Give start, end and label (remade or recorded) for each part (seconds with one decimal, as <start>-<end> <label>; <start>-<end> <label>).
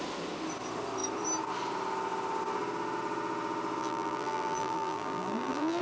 0.0-3.8 recorded; 3.8-5.8 remade